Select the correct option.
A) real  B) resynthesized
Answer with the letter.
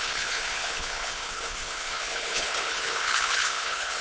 B